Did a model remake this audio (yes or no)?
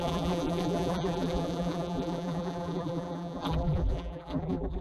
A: yes